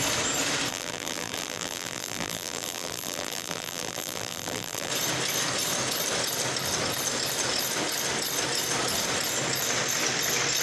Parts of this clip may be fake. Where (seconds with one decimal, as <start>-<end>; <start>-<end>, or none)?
0.7-4.9